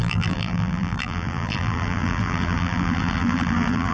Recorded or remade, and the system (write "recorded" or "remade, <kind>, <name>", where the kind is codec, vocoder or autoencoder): remade, vocoder, BigVGAN v2